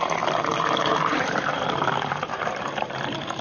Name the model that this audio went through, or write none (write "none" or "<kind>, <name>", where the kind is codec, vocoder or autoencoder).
vocoder, BigVGAN v2